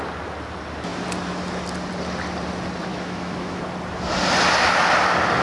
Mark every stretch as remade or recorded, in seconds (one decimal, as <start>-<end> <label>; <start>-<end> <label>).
0.0-2.9 recorded; 2.9-3.6 remade; 3.6-5.4 recorded